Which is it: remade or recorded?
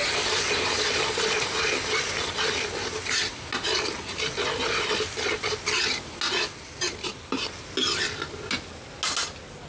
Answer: recorded